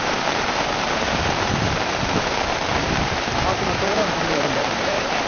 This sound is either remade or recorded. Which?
remade